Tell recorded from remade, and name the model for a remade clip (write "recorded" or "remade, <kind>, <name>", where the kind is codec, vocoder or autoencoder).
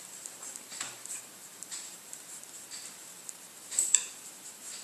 remade, vocoder, BigVGAN v2